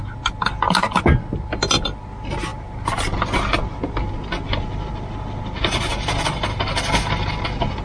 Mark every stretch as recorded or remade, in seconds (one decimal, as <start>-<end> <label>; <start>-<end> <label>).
0.0-7.8 recorded